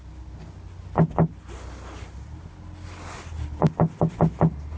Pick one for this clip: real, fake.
real